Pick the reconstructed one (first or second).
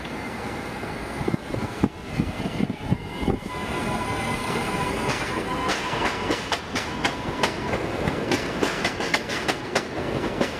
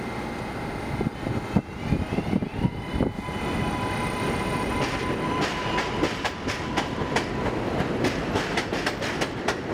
first